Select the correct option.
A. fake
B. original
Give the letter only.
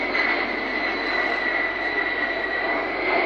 B